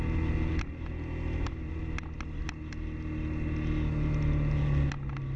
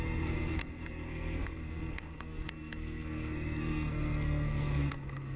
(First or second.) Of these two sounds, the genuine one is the first